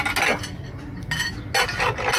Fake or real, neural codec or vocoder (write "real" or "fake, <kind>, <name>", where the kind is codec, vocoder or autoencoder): real